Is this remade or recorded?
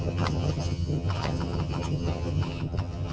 remade